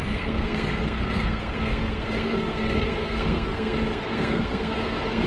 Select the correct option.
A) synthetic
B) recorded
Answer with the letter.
A